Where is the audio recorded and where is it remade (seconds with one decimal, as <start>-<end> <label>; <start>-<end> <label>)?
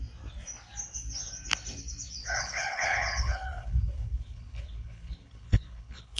0.0-2.2 recorded; 2.2-6.2 remade